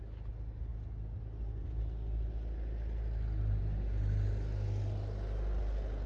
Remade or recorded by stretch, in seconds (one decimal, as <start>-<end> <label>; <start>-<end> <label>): 0.0-6.1 recorded